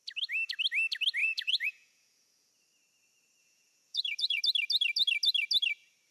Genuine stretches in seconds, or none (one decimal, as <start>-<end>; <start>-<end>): 0.0-1.2; 2.5-3.4; 4.4-6.1